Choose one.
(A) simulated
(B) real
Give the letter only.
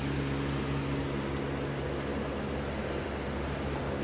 B